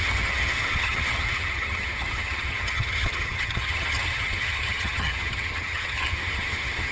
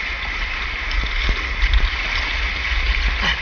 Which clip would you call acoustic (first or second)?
second